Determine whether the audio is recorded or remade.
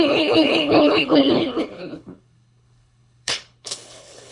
remade